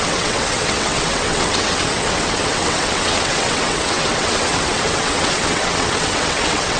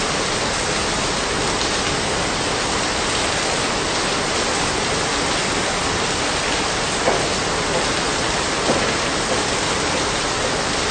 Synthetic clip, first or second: first